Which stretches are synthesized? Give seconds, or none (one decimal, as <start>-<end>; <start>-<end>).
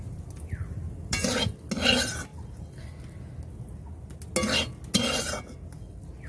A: none